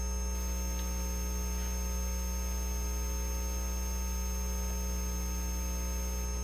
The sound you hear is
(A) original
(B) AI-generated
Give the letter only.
A